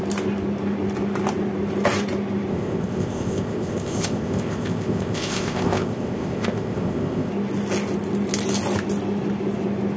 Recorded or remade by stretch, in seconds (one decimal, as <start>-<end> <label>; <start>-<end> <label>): 0.0-2.5 recorded; 2.5-7.3 remade; 7.3-10.0 recorded